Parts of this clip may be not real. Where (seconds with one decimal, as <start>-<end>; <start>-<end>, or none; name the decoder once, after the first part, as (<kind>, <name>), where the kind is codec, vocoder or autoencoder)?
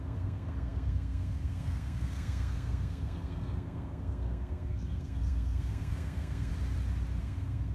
0.0-6.5 (codec, SNAC); 7.2-7.7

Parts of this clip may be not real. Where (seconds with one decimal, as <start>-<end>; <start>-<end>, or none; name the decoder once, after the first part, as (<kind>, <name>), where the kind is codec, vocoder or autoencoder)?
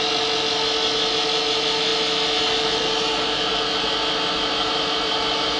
none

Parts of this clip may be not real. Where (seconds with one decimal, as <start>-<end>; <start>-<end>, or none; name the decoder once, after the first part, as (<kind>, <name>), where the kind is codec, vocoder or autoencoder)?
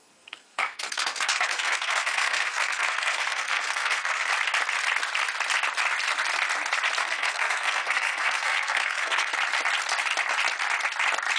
0.0-4.3 (codec, SNAC); 7.0-9.3